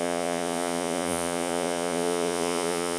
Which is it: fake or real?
fake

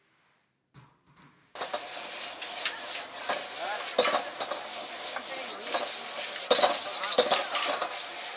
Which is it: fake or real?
real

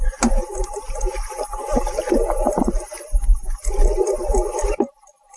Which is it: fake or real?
real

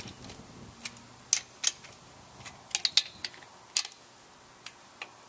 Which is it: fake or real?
real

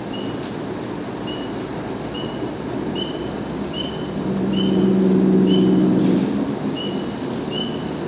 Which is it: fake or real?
real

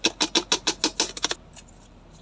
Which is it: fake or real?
real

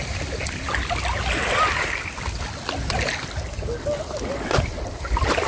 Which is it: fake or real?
real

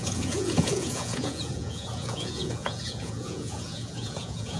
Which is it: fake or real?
fake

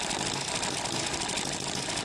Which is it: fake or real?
real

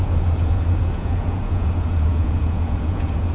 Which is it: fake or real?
fake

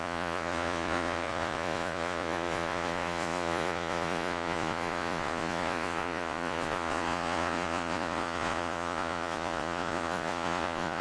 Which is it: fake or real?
fake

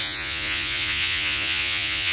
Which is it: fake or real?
fake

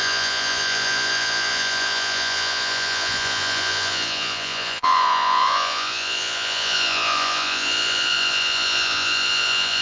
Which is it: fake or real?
fake